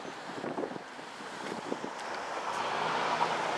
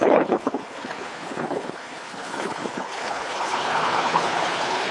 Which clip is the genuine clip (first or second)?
first